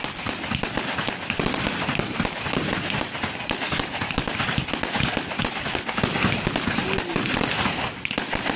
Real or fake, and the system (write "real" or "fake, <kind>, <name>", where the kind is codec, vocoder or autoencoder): real